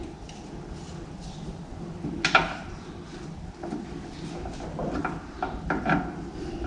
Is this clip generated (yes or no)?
no